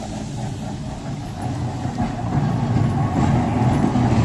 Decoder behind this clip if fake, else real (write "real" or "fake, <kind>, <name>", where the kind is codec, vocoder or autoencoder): real